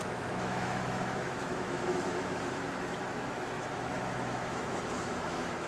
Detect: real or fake fake